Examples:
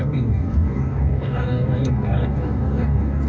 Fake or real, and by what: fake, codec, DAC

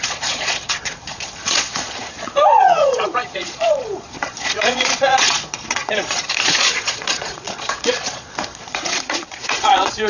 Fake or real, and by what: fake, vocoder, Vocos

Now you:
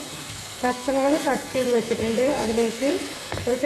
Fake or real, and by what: fake, codec, SNAC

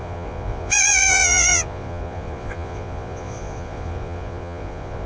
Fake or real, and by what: fake, vocoder, Vocos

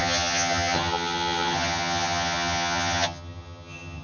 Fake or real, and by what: fake, vocoder, HiFi-GAN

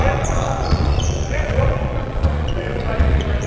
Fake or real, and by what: fake, vocoder, Vocos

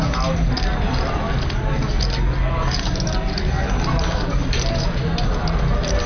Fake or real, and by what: real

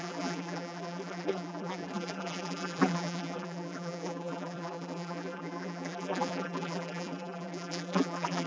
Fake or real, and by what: fake, vocoder, BigVGAN v2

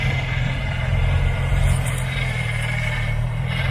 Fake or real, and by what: fake, vocoder, BigVGAN v2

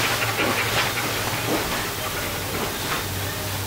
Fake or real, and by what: real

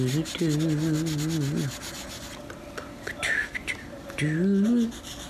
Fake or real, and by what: real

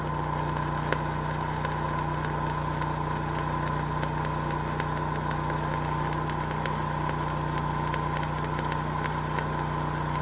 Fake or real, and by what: real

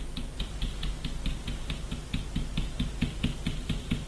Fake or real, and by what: real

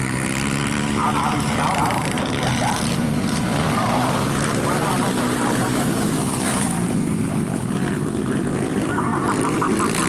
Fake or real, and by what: fake, vocoder, BigVGAN v2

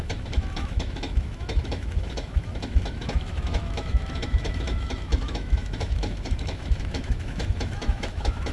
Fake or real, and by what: fake, autoencoder, DAC-VAE